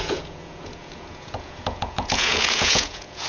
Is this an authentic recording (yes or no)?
no